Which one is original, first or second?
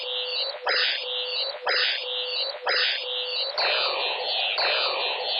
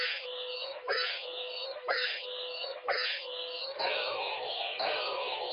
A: first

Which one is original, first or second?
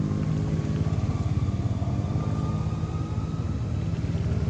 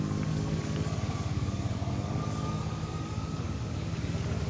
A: first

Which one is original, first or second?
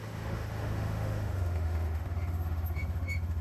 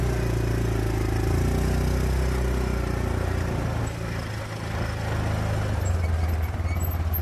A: second